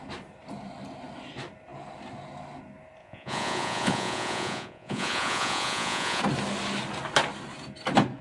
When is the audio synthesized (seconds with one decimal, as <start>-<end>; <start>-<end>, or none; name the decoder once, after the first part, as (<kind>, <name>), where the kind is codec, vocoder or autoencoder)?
3.0-6.2 (vocoder, Vocos)